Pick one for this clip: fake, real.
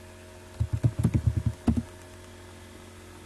real